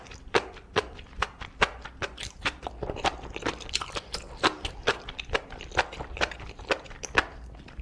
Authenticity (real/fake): fake